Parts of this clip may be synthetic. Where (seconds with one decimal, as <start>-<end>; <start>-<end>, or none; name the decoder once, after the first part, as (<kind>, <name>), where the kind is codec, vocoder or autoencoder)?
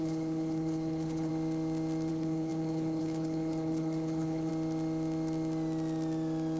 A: 0.0-1.3 (codec, HILCodec); 2.1-4.5